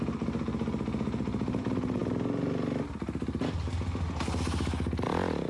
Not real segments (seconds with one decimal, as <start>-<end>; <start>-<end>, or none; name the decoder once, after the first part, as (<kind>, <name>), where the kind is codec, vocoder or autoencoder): none